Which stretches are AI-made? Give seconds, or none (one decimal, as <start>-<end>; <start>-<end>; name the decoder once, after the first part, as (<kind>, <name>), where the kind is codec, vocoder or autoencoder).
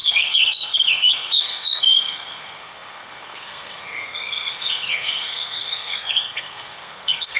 0.0-7.4 (codec, SNAC)